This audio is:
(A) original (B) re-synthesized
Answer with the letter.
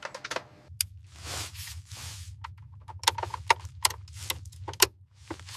A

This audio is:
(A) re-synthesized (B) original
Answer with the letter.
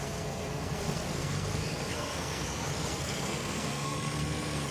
A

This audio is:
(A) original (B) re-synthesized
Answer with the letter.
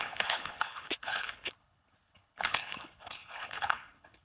B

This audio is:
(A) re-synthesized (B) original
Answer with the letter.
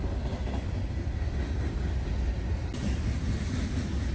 B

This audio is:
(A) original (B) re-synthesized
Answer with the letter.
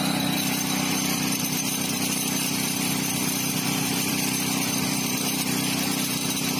B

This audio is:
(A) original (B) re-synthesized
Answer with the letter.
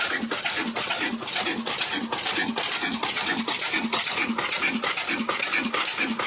A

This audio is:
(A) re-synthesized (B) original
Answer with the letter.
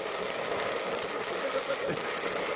B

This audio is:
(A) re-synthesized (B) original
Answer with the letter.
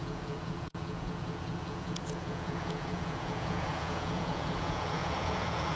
A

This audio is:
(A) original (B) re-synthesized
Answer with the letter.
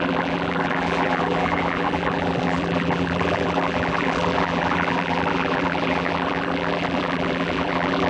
B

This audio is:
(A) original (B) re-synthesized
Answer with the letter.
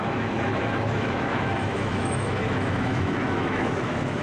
B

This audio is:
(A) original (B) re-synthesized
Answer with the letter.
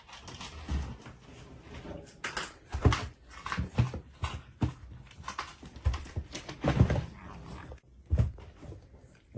A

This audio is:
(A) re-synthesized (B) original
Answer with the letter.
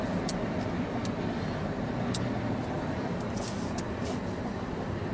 B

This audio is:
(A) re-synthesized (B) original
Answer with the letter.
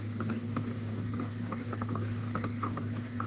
A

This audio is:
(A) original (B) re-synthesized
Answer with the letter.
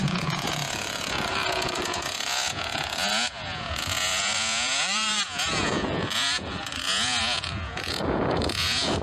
B